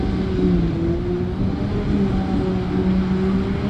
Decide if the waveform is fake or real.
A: real